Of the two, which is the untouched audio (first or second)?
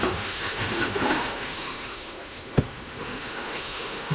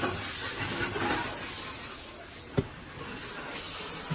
second